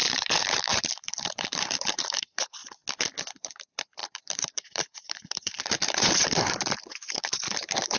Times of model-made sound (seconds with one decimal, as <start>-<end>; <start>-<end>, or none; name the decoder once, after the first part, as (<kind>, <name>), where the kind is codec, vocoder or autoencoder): 0.0-2.6 (vocoder, BigVGAN v2); 3.4-8.0